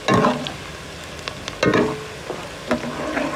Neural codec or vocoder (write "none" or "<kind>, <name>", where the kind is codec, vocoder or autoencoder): none